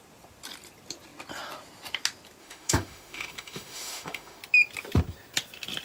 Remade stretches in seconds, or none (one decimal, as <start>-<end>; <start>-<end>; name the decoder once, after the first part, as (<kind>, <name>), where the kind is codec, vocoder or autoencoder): 2.4-4.4 (autoencoder, DAC-VAE)